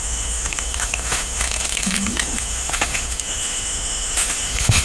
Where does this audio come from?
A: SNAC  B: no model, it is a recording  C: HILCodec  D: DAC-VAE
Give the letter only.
D